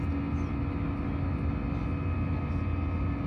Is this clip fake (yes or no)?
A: no